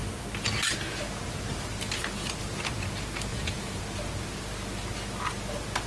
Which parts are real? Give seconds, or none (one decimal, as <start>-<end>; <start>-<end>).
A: 0.0-3.3; 3.8-5.9